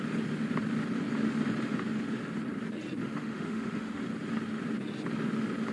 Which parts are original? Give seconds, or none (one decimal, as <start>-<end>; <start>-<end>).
0.0-3.0; 4.0-5.7